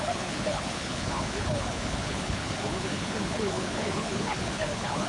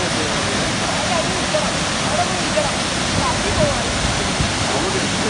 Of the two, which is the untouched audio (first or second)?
second